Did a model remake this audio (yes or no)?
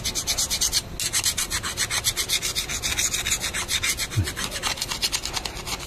no